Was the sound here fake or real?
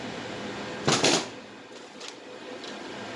real